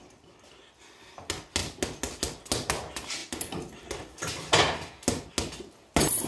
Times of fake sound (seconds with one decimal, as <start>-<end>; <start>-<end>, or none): none